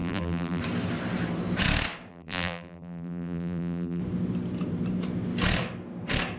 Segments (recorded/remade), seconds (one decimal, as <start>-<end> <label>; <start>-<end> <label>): 0.0-0.6 remade; 0.6-2.1 recorded; 2.1-4.0 remade; 4.0-6.4 recorded